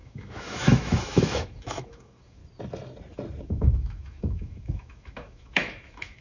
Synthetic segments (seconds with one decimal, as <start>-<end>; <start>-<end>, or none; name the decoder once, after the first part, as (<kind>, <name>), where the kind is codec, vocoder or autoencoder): 0.0-2.4 (autoencoder, DAC-VAE); 3.4-6.2